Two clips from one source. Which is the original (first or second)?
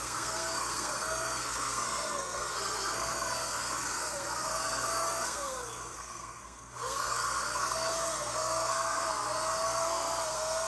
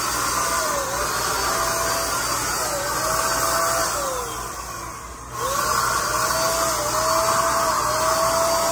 second